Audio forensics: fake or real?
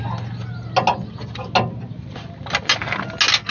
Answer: real